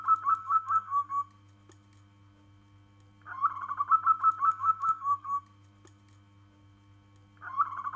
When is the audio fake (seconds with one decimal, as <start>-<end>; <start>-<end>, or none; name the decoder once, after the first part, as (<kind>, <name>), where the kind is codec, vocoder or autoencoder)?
0.4-1.1 (codec, SNAC); 4.5-5.4